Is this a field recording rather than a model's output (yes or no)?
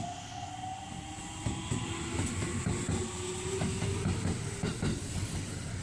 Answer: yes